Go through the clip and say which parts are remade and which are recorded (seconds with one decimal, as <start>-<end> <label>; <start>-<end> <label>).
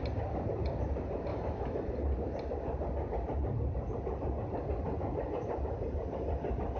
0.0-1.3 recorded; 1.3-1.9 remade; 1.9-6.8 recorded